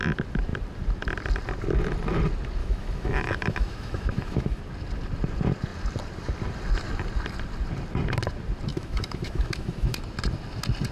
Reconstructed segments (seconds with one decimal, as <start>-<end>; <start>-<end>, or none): 2.6-4.6; 8.7-10.0